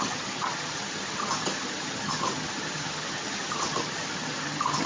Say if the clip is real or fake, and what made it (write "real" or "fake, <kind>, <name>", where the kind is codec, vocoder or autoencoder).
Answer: fake, vocoder, HiFi-GAN